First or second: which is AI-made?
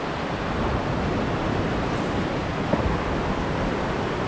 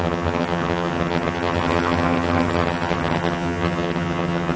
second